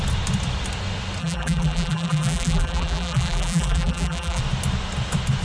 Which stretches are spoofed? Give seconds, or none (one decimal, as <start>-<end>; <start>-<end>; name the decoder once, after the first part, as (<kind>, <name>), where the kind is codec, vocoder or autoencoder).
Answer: 1.2-4.4 (vocoder, BigVGAN v2)